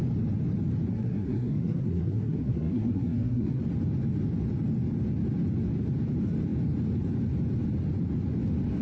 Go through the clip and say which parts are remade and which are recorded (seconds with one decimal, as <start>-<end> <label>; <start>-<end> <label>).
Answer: 0.0-0.9 recorded; 0.9-3.6 remade; 3.6-8.8 recorded